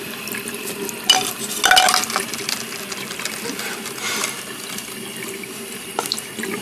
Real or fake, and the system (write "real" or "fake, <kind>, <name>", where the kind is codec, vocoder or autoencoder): real